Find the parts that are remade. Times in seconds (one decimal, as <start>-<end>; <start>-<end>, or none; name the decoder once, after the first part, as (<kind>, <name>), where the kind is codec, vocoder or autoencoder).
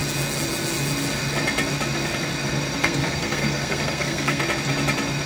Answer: 2.8-4.4 (codec, SNAC)